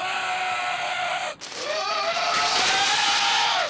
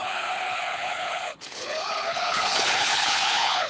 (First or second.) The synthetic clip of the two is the second